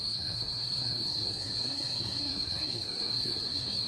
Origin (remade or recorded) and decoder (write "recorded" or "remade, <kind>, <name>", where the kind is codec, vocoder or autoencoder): remade, codec, SNAC